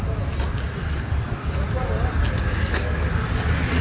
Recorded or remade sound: recorded